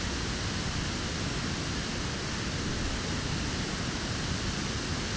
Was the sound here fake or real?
real